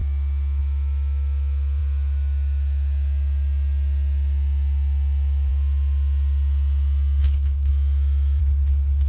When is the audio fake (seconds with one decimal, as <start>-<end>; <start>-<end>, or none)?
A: 7.2-7.7; 8.4-9.1